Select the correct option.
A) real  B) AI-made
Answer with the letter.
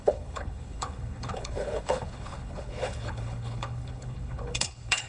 B